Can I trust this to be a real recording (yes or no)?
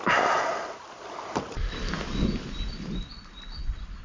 yes